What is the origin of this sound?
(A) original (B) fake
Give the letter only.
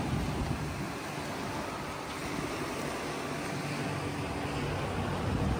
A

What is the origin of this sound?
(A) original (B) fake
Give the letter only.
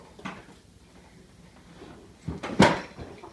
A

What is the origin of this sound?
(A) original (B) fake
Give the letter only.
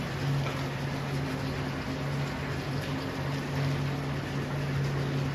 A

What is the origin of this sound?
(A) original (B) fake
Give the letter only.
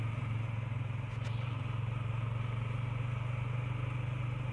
A